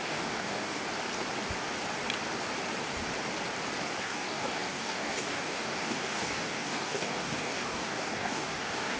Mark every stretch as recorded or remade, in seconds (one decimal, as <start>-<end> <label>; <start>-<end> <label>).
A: 0.0-0.8 remade; 0.8-4.0 recorded; 4.0-9.0 remade